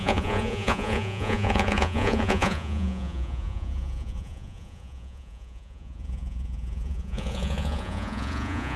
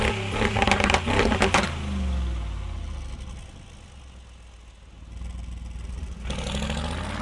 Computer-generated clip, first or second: first